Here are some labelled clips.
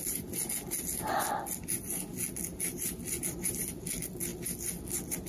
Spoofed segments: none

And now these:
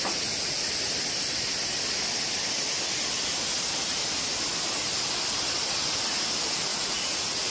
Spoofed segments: 0.0-0.7 (vocoder, Vocos); 6.7-7.5

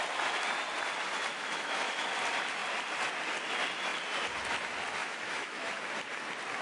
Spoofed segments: 1.3-2.1 (autoencoder, DAC-VAE); 5.0-5.8

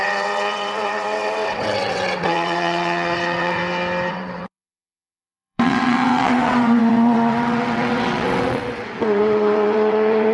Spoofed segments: 0.0-3.6 (vocoder, WaveNeXt); 4.1-10.3